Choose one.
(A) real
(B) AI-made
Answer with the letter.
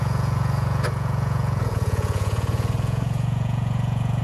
B